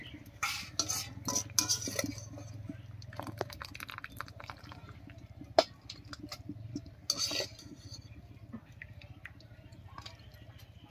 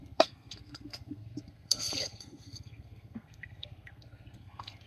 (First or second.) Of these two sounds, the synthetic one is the second